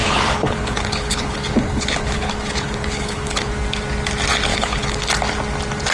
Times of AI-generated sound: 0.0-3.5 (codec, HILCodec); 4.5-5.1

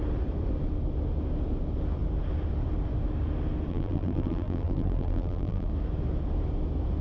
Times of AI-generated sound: 3.7-5.7 (vocoder, BigVGAN v2)

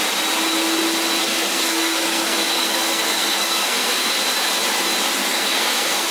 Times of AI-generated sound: 1.2-4.1 (codec, SNAC); 5.2-6.1

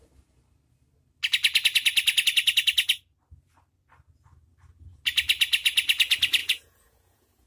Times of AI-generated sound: 6.4-7.5 (vocoder, Vocos)

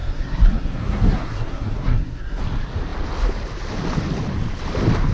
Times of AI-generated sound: 0.0-2.4 (codec, SNAC)